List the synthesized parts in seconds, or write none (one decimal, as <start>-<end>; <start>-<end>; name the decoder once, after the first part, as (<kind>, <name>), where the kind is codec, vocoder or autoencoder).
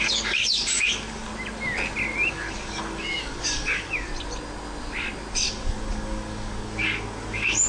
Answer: 0.0-1.3 (codec, DAC); 2.3-4.1; 5.5-7.7